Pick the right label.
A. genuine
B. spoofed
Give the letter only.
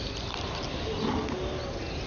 A